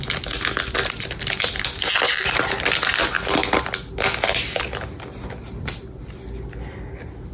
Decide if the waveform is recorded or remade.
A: recorded